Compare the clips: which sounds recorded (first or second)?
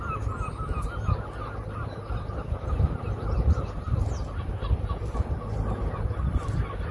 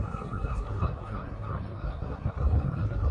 first